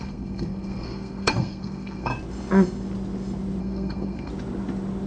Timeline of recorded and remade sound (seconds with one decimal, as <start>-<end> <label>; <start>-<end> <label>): 0.0-2.1 remade; 2.1-3.6 recorded; 3.6-4.3 remade; 4.3-5.1 recorded